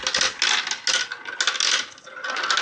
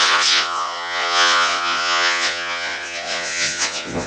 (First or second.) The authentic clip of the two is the first